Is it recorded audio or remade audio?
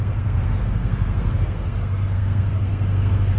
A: remade